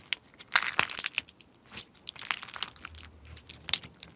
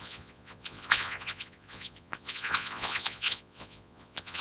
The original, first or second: first